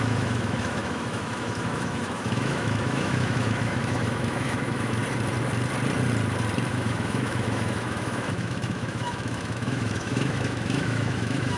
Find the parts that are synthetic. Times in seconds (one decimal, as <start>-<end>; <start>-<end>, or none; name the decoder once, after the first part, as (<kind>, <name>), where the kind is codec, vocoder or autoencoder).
0.0-5.0 (autoencoder, DAC-VAE); 6.7-11.6